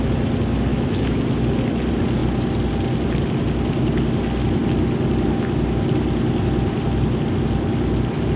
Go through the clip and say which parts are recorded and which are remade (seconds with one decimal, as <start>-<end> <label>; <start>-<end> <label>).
0.0-0.7 recorded; 0.7-1.2 remade; 1.2-8.4 recorded